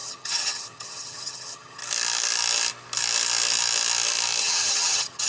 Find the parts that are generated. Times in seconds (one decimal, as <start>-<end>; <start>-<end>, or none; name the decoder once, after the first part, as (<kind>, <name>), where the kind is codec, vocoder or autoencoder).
0.0-1.8 (vocoder, HiFi-GAN); 4.4-5.3